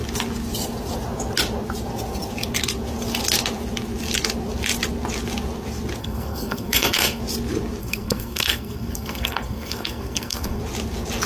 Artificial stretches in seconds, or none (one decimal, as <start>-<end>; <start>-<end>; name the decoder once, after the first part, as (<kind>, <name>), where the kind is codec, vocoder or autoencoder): 6.0-7.2 (codec, SNAC); 7.8-10.6